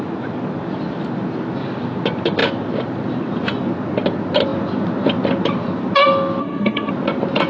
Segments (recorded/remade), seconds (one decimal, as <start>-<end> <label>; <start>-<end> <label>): 0.0-6.4 recorded; 6.4-6.9 remade; 6.9-7.5 recorded